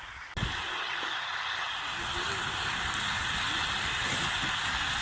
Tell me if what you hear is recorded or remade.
recorded